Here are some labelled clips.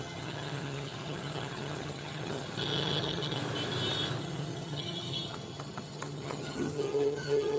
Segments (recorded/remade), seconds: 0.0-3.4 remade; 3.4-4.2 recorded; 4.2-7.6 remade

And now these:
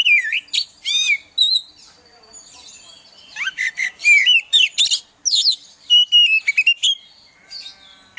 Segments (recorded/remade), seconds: 0.0-1.6 recorded; 1.6-4.7 remade; 4.7-8.2 recorded